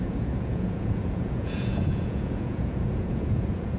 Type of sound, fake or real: fake